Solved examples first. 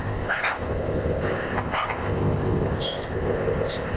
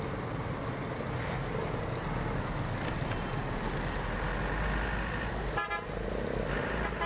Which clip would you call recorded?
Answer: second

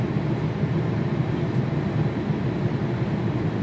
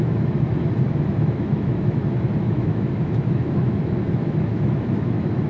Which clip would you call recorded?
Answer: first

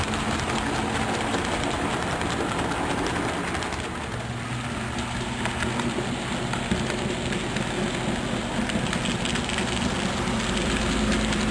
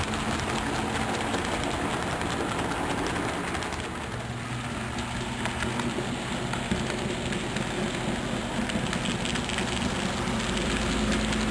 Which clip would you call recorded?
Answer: second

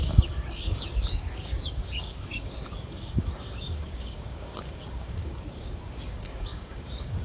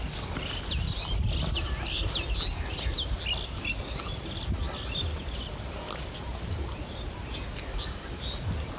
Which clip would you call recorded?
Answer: second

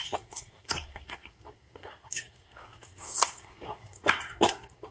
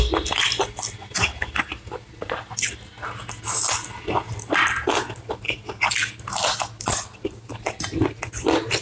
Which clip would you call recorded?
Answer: second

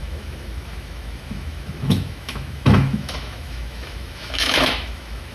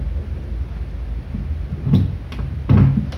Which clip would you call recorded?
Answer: second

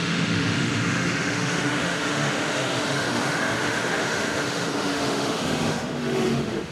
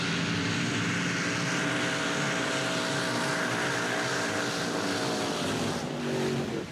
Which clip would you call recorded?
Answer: second